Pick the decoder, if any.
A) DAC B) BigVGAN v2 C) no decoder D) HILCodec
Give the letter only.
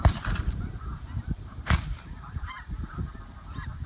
B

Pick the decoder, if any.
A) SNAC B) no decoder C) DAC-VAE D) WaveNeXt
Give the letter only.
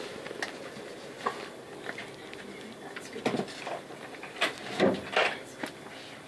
B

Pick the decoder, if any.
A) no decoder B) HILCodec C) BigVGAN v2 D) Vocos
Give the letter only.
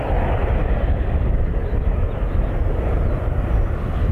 A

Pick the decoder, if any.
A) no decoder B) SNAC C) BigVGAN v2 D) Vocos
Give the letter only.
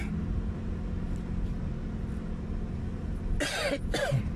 A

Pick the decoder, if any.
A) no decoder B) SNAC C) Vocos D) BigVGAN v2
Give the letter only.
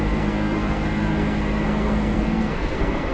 B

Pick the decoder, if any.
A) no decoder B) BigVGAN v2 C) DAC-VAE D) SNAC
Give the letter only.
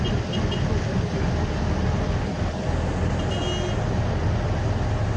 A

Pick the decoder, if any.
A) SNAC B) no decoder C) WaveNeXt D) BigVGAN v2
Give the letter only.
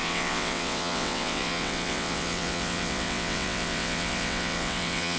C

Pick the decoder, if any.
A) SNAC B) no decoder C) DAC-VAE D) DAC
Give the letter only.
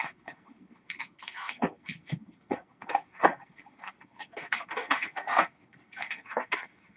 A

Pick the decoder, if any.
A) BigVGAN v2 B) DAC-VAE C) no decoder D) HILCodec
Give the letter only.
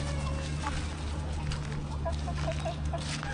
C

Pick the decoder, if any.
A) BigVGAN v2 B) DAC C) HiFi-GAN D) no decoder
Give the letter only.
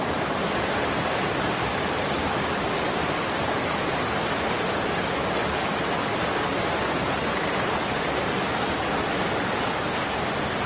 D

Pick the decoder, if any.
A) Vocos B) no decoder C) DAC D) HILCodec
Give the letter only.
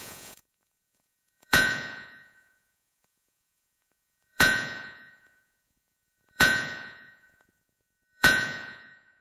A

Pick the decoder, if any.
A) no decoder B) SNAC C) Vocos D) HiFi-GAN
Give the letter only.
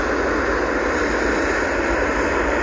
A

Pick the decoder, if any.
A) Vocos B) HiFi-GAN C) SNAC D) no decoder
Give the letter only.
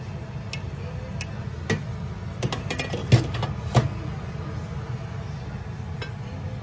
D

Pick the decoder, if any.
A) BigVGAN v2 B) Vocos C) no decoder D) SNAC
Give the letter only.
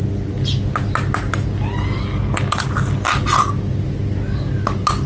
C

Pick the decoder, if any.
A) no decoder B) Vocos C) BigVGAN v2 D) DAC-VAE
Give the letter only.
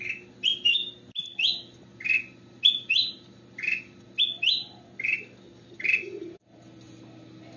A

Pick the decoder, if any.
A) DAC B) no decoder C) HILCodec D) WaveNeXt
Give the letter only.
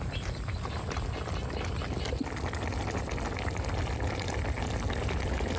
B